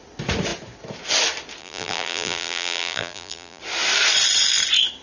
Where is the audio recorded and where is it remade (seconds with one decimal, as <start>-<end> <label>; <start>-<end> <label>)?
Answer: 0.0-1.6 recorded; 1.6-3.6 remade; 3.6-5.0 recorded